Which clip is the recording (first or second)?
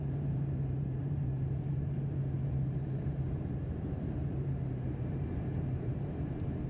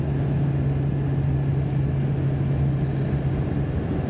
second